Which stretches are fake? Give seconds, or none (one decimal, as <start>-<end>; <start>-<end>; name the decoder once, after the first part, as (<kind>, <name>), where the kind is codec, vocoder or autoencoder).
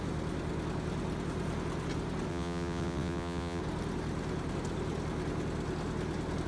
2.3-3.6 (vocoder, WaveNeXt)